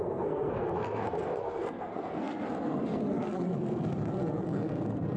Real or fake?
fake